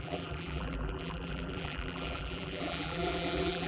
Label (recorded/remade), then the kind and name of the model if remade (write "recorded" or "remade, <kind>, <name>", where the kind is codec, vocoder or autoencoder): remade, vocoder, BigVGAN v2